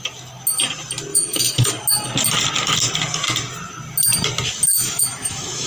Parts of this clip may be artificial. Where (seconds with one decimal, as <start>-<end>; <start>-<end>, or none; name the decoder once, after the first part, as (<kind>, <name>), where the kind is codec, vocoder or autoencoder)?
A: 1.1-1.7 (autoencoder, DAC-VAE); 4.8-5.7